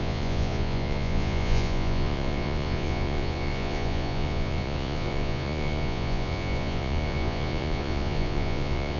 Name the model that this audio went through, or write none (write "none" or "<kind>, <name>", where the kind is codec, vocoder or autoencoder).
vocoder, Vocos